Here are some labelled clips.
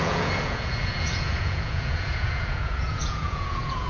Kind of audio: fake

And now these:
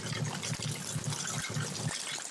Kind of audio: real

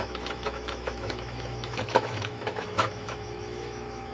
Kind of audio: fake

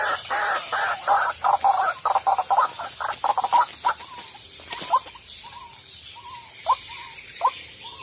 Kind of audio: real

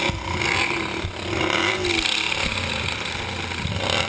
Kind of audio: real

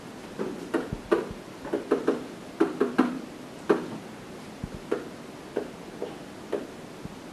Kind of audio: real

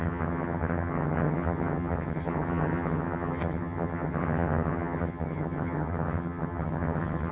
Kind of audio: fake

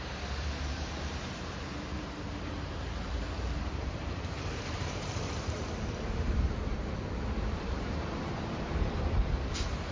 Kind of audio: fake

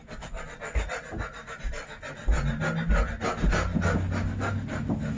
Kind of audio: real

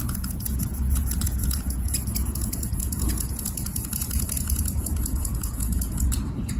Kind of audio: fake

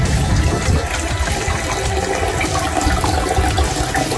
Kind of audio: real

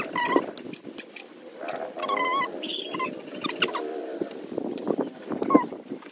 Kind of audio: real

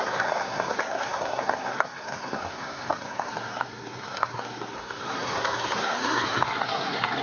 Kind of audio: fake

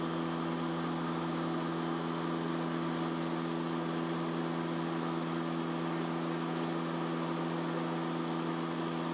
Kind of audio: real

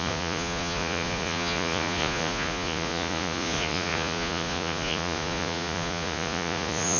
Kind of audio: fake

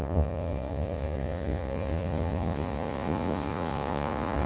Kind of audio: fake